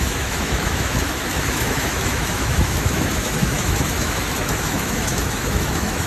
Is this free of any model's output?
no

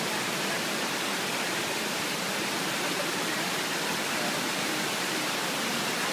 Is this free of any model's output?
yes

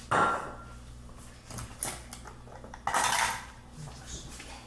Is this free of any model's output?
yes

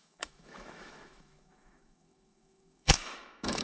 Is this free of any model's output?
no